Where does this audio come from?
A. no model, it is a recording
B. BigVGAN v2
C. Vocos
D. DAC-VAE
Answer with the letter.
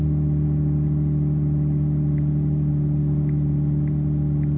A